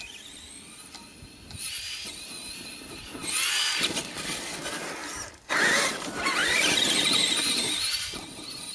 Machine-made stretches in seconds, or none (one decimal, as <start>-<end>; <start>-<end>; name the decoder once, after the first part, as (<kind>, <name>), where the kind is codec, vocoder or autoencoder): 6.4-7.9 (vocoder, BigVGAN v2)